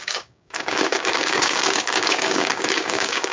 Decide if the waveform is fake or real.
fake